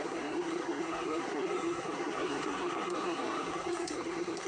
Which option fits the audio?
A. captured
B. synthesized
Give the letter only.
B